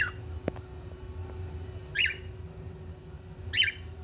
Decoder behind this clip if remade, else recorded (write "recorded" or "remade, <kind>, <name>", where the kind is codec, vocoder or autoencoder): recorded